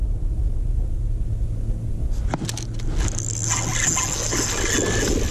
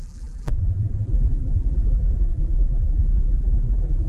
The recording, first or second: first